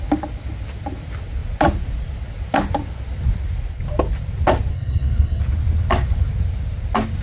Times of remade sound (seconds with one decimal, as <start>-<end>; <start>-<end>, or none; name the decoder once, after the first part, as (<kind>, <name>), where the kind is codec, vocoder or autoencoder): 4.7-5.4 (codec, SNAC)